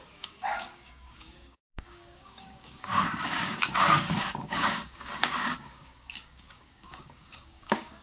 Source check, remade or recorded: remade